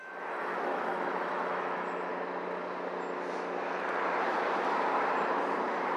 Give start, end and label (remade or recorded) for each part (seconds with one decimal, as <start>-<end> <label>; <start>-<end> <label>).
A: 0.0-2.1 remade; 2.1-6.0 recorded